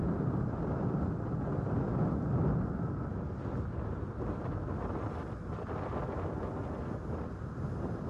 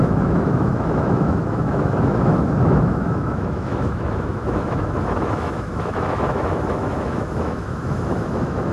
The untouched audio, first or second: first